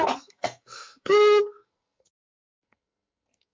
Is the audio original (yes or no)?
no